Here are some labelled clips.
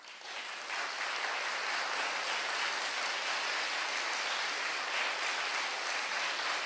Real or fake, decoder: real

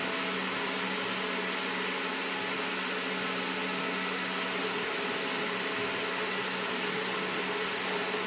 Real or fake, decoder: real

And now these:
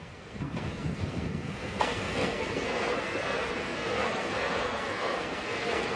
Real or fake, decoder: fake, codec, SNAC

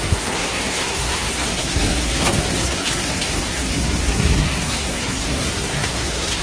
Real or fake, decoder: fake, codec, SNAC